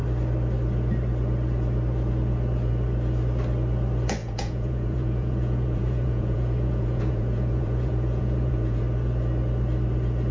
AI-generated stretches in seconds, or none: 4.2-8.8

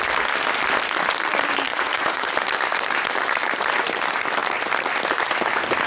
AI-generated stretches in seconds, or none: 1.7-2.3

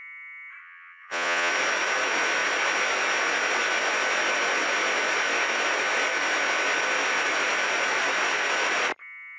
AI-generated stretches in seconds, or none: 0.6-1.5

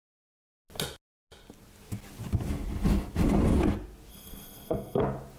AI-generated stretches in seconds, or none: 4.1-5.0

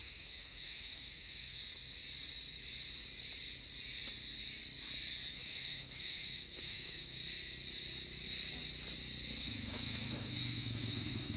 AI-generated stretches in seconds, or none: 0.0-1.6; 5.3-7.2; 9.4-11.4

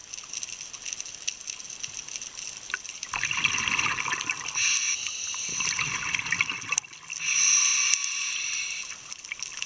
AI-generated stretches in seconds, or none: 7.7-8.3

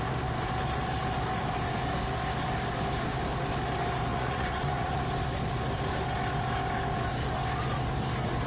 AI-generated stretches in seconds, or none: 4.1-5.0